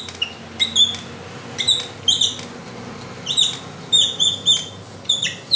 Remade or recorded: recorded